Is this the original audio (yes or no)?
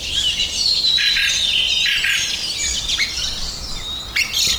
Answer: yes